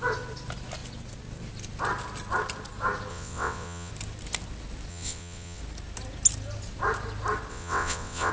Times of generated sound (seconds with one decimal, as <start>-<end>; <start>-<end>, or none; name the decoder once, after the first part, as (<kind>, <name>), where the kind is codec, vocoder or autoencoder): 3.1-3.9 (vocoder, WaveNeXt); 4.9-5.6; 7.5-8.3